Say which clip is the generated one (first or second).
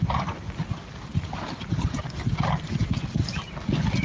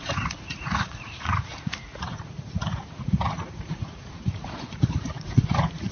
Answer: second